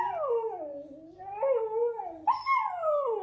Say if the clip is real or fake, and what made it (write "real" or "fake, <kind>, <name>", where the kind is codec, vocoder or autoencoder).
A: real